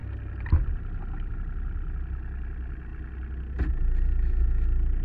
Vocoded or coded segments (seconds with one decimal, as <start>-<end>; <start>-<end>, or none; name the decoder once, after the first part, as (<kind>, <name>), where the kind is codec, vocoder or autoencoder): none

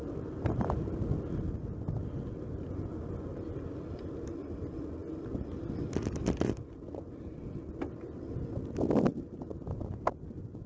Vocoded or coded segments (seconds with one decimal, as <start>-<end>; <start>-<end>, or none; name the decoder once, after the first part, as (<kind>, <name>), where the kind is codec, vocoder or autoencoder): none

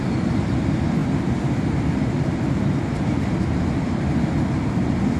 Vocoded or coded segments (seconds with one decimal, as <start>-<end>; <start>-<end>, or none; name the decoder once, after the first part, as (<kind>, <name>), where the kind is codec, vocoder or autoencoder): none

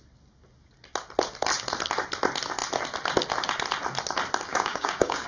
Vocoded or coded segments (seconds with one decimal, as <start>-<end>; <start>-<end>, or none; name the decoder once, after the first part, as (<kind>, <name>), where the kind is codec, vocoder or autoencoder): 4.5-5.3 (codec, DAC)

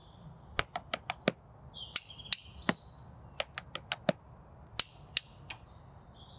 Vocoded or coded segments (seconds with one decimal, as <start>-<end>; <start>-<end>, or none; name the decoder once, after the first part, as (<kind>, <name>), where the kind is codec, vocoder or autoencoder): none

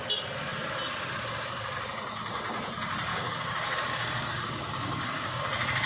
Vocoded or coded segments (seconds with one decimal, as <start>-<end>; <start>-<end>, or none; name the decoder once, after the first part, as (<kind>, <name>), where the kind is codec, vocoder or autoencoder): 3.1-5.4 (codec, DAC)